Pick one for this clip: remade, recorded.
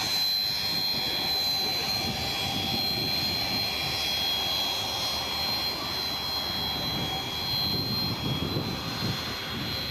recorded